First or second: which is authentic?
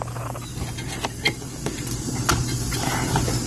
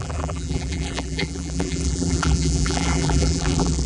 first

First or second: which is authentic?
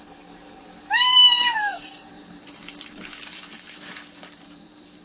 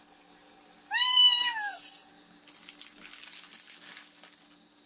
second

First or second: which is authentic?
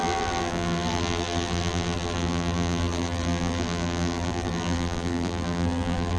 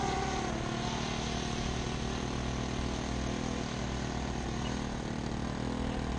second